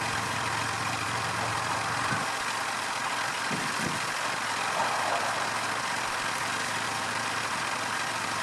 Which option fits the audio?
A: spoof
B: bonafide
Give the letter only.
A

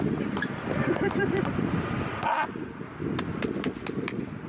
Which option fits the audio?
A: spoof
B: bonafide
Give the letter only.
B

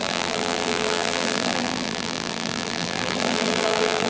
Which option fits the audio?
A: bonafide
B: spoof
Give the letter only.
B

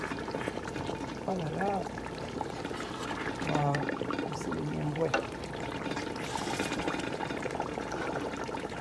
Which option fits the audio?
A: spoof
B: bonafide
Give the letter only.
A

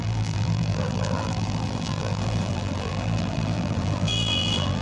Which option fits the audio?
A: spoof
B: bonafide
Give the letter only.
A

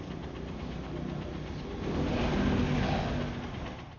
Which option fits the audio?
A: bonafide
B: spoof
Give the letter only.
A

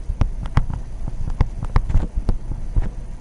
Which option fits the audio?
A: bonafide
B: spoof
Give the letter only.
A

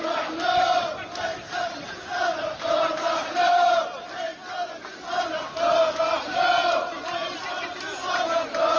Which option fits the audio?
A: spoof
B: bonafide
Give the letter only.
A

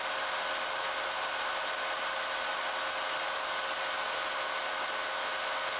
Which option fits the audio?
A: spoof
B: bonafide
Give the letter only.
B